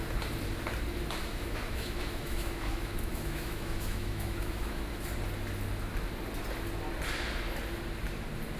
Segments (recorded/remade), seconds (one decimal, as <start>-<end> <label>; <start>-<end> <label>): 0.0-1.2 recorded; 1.2-4.8 remade; 4.8-8.6 recorded

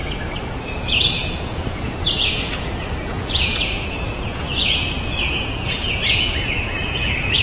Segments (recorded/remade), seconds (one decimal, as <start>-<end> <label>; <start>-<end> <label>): 0.0-0.6 recorded; 0.6-7.4 remade

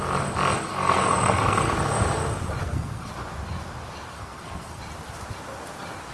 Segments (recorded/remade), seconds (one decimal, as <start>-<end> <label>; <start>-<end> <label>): 0.0-0.7 recorded; 0.7-1.7 remade; 1.7-2.6 recorded; 2.6-3.1 remade; 3.1-4.1 recorded; 4.1-4.8 remade; 4.8-6.1 recorded

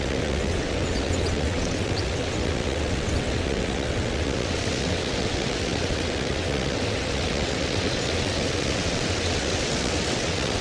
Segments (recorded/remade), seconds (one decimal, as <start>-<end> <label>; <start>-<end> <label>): 0.0-10.6 remade